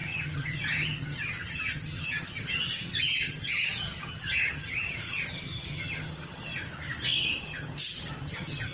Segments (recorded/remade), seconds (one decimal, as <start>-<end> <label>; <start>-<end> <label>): 0.0-6.5 remade; 6.5-7.4 recorded; 7.4-8.7 remade

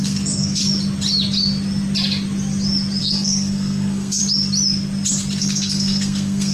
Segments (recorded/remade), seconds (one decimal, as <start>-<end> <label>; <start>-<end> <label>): 0.0-0.6 remade; 0.6-3.0 recorded; 3.0-4.2 remade; 4.2-5.4 recorded; 5.4-6.5 remade